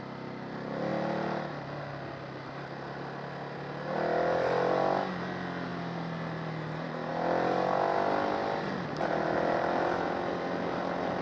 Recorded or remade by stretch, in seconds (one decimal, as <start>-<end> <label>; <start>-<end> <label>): 0.0-11.2 recorded